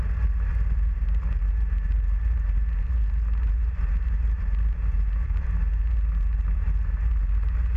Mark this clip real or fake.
fake